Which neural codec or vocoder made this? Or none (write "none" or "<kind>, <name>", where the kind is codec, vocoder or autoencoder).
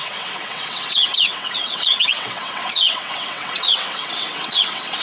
vocoder, WaveNeXt